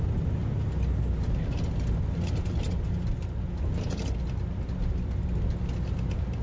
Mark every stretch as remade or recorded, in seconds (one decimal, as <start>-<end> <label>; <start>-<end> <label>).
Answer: 0.0-6.4 recorded